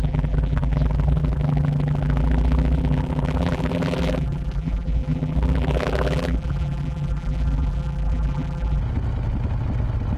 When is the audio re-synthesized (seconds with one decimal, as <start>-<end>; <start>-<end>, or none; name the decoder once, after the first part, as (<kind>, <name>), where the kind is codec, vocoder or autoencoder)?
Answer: 0.0-8.8 (vocoder, BigVGAN v2)